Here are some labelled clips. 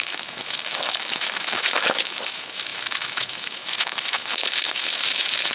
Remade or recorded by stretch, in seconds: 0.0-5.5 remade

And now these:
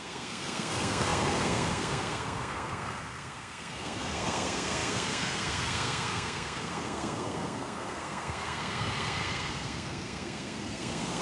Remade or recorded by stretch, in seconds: 0.0-11.2 remade

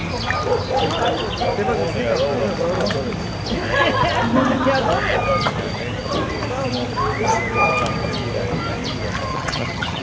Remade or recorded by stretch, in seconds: 0.0-9.3 recorded; 9.3-10.0 remade

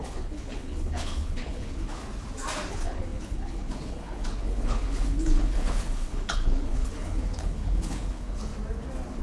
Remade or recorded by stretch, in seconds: 0.0-2.0 remade; 2.0-2.7 recorded; 2.7-8.5 remade; 8.5-9.2 recorded

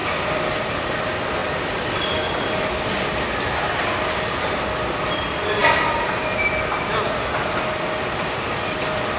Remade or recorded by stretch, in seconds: 0.0-9.2 recorded